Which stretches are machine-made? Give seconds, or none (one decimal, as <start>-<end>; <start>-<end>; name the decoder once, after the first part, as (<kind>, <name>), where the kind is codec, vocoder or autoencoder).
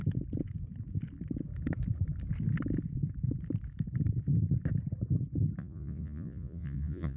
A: 5.6-7.2 (vocoder, Vocos)